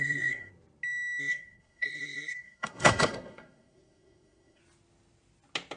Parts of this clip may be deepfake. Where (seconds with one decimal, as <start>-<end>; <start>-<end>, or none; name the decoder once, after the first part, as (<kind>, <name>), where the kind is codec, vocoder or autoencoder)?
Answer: 0.0-0.5 (codec, SNAC); 1.2-4.6